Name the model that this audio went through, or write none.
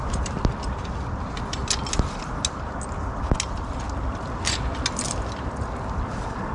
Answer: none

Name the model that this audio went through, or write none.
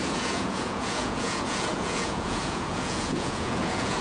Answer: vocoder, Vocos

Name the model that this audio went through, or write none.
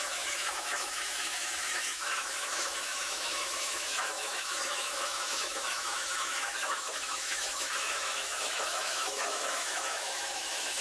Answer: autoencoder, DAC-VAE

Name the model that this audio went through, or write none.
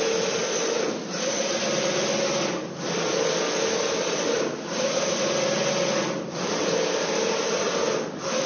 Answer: none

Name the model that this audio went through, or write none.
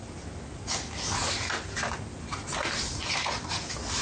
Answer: none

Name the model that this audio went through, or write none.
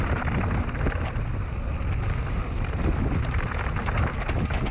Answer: none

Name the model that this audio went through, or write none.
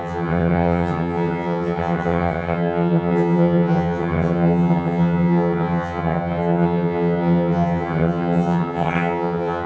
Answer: vocoder, HiFi-GAN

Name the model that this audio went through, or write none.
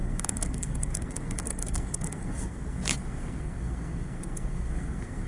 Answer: codec, SNAC